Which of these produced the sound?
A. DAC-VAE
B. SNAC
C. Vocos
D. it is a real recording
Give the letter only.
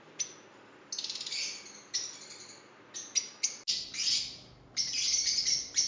D